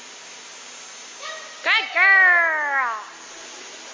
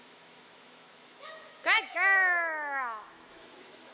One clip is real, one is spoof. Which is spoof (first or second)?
second